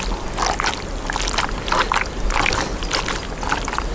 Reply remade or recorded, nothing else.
recorded